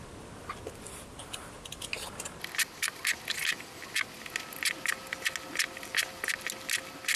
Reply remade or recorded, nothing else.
recorded